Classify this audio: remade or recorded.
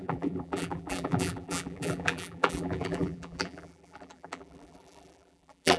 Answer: remade